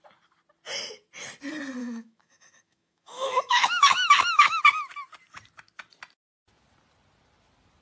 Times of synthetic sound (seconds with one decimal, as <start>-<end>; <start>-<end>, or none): 1.8-4.6